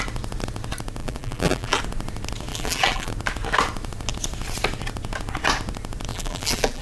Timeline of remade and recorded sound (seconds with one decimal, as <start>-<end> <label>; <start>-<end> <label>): 0.0-1.0 recorded; 1.0-1.8 remade; 1.8-2.5 recorded; 2.5-3.1 remade; 3.1-6.1 recorded; 6.1-6.8 remade